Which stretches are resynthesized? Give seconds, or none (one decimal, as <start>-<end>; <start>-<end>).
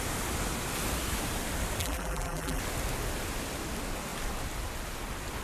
1.8-2.6